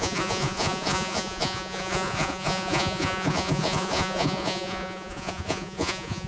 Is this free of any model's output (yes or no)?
no